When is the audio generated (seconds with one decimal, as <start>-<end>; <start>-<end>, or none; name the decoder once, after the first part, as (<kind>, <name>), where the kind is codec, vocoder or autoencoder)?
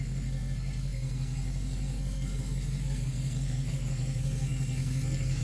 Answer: 0.0-5.4 (codec, SNAC)